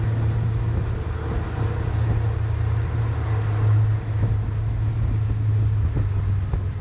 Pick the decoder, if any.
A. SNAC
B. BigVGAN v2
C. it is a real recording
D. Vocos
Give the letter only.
C